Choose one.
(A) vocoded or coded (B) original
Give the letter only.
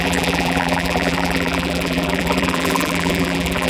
A